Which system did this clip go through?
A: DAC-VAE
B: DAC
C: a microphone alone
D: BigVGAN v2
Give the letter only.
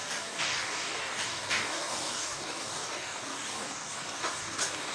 B